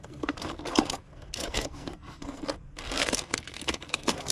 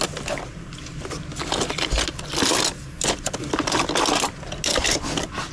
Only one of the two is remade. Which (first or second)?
first